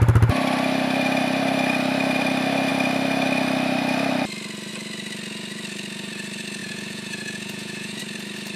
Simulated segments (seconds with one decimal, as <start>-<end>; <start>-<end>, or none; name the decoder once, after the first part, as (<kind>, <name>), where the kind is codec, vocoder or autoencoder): 6.6-8.0 (vocoder, Vocos)